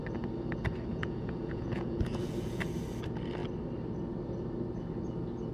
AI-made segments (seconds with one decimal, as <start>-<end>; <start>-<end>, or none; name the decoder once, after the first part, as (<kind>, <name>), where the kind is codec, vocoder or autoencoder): 0.9-2.6 (vocoder, Vocos)